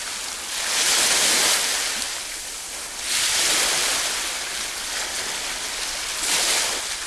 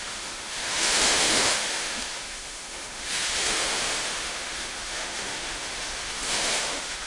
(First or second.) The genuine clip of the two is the first